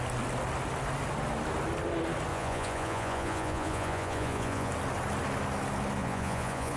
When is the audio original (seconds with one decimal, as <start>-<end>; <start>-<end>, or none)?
0.0-2.3; 4.7-6.0